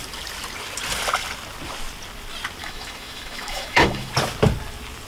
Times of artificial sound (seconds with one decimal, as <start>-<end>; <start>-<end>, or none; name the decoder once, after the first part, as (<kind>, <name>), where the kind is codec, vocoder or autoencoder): 2.6-4.1 (autoencoder, DAC-VAE)